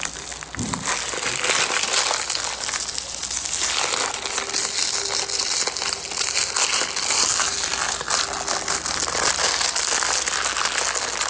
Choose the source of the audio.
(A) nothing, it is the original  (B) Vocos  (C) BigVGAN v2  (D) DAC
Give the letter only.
A